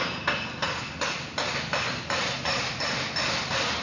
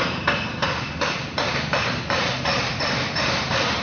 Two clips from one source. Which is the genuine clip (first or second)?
first